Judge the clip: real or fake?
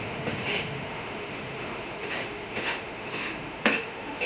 fake